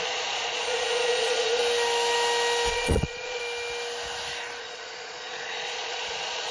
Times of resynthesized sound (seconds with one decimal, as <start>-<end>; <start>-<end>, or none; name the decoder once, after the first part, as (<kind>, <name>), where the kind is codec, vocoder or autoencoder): 0.0-1.6 (vocoder, Vocos); 2.7-3.4; 4.6-6.5